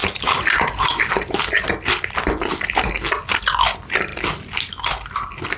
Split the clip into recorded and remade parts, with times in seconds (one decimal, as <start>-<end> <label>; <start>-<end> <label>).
0.0-5.6 recorded